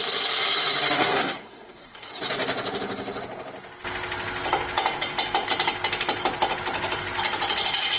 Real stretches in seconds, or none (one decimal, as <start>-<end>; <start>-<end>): 0.0-1.0; 2.1-8.0